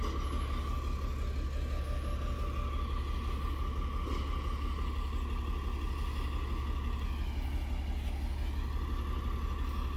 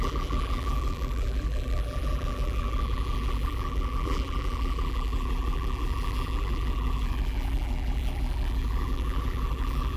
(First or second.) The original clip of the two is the first